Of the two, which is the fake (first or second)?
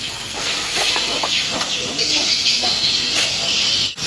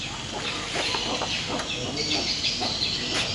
first